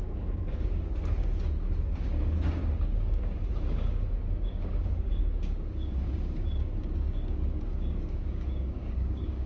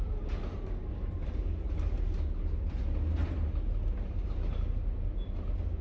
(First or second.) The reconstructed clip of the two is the first